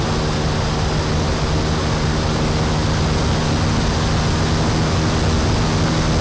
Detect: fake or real real